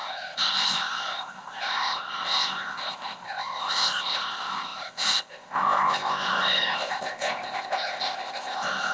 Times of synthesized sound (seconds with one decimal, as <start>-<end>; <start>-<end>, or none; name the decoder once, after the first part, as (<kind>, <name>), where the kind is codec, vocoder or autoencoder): 0.0-8.9 (codec, ZipCodec)